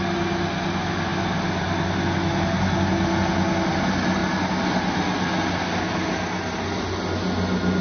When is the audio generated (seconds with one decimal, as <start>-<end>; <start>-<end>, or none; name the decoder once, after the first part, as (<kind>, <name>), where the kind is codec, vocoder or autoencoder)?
none